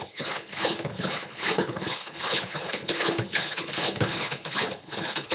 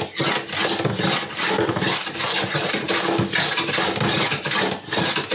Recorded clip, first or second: second